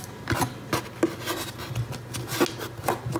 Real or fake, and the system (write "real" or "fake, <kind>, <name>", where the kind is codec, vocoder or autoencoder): real